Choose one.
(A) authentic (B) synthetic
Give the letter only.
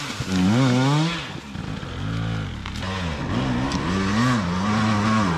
A